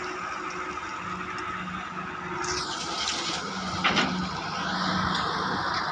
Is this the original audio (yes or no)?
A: yes